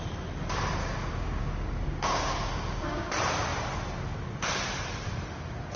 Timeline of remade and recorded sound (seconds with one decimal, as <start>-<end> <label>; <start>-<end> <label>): 0.0-0.8 recorded; 0.8-3.1 remade; 3.1-5.8 recorded